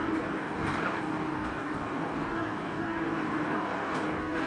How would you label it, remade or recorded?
remade